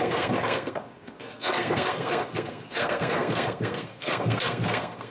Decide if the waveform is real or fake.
fake